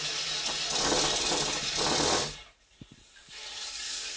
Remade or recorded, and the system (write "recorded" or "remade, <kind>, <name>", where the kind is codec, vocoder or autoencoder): recorded